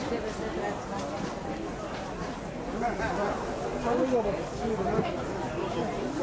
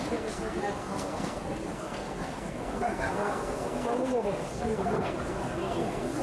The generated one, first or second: second